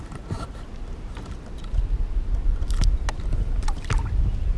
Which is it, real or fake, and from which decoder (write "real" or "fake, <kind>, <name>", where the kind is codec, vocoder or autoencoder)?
real